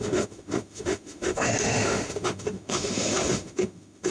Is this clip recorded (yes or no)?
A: no